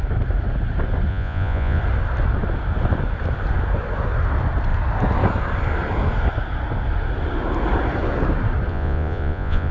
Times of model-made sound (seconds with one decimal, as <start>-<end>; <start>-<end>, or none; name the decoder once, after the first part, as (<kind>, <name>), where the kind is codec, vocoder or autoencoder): 1.1-1.8 (vocoder, Vocos); 8.7-9.7